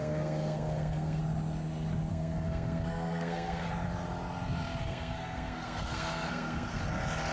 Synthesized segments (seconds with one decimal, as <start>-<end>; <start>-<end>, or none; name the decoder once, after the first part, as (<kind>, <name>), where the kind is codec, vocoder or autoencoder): 0.0-1.2 (codec, SNAC); 2.1-3.7; 4.8-6.8